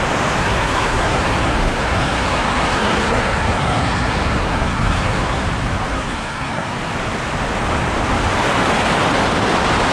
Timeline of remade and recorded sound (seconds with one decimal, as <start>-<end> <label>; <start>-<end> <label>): 0.0-0.4 recorded; 0.4-5.4 remade; 5.4-5.9 recorded; 5.9-6.7 remade; 6.7-9.9 recorded